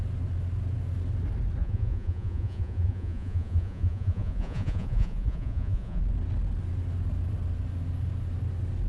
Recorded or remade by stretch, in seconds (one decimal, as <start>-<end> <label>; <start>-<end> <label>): 0.0-1.6 recorded; 1.6-6.0 remade; 6.0-8.9 recorded